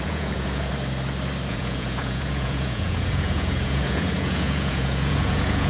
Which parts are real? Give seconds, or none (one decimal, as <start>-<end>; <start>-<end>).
0.7-1.5